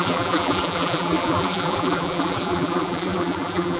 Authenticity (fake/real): fake